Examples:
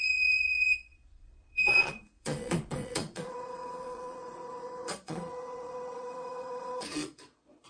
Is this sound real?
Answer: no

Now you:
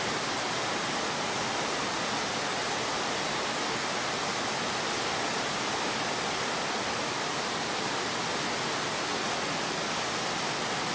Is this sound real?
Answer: yes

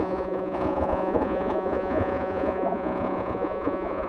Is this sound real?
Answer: no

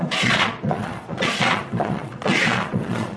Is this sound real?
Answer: no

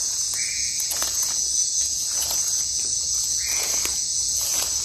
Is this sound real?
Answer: no